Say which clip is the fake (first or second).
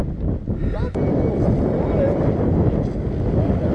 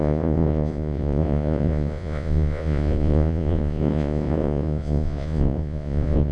second